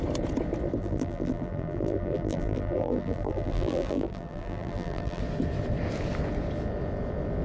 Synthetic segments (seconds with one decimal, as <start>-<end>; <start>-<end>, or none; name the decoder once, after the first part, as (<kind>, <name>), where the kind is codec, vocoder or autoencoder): 0.8-5.2 (vocoder, BigVGAN v2)